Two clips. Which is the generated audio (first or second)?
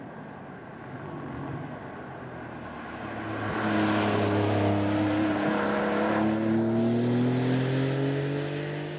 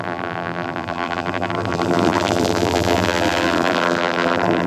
second